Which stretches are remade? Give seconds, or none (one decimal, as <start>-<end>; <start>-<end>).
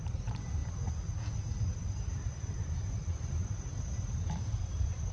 0.0-0.6; 1.6-5.1